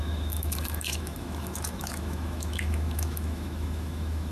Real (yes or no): no